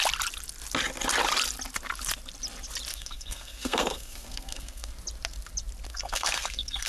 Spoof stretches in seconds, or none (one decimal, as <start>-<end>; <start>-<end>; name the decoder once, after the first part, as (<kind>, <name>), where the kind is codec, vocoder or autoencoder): 2.9-4.9 (codec, SNAC); 5.9-6.9